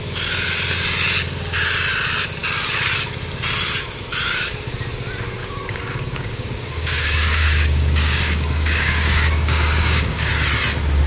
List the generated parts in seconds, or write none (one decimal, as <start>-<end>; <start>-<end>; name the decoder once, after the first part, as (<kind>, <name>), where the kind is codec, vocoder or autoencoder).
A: 5.4-10.3 (codec, DAC)